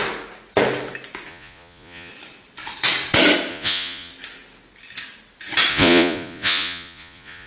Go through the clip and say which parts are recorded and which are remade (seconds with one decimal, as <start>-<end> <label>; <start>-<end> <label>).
0.0-1.3 recorded; 1.3-2.1 remade; 2.1-3.5 recorded; 3.5-4.1 remade; 4.1-5.7 recorded; 5.7-7.5 remade